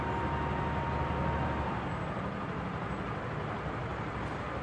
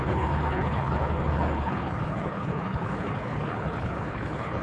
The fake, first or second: second